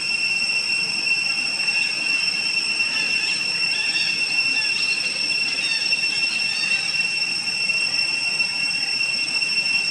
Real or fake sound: real